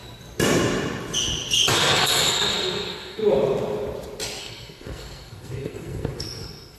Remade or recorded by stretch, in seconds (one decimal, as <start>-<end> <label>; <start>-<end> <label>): 0.0-1.7 recorded; 1.7-3.2 remade; 3.2-4.4 recorded; 4.4-6.8 remade

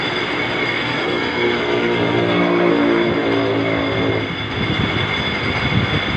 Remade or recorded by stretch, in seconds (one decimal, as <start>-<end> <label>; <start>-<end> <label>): 0.0-0.6 recorded; 0.6-2.7 remade; 2.7-6.2 recorded

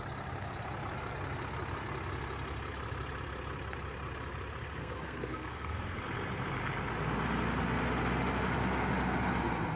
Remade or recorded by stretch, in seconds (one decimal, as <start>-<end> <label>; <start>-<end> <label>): 0.0-4.8 recorded; 4.8-6.0 remade; 6.0-9.8 recorded

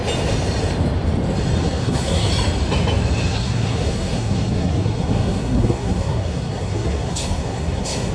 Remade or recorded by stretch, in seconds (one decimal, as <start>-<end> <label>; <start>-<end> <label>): 0.0-1.6 recorded; 1.6-2.3 remade; 2.3-3.3 recorded; 3.3-8.1 remade

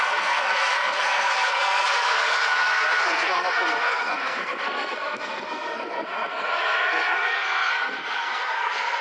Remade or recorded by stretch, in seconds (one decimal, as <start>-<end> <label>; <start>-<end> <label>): 0.0-9.0 remade